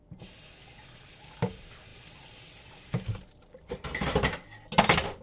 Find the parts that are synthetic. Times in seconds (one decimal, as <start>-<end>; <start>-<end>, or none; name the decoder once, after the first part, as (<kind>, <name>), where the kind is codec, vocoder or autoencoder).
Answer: none